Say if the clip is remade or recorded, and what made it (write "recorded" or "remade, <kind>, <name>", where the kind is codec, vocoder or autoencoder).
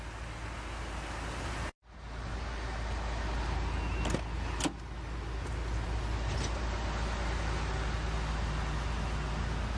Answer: recorded